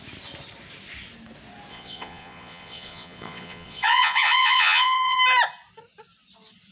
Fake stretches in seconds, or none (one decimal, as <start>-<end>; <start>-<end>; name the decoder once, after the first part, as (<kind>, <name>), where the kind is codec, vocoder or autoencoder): 1.7-5.2 (vocoder, Vocos)